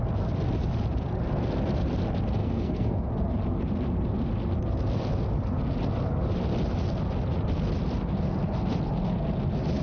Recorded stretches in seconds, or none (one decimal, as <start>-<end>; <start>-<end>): 0.0-2.4; 3.1-9.8